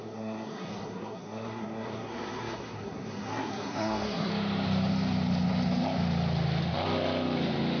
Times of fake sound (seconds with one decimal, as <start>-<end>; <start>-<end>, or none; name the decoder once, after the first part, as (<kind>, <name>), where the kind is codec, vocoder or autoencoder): 0.0-4.3 (codec, SNAC)